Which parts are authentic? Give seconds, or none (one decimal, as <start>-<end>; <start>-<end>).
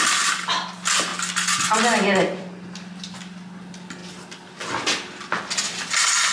0.0-6.3